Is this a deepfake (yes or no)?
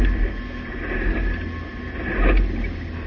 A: no